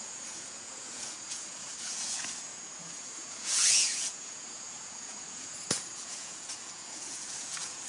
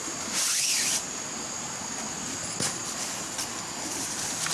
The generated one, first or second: first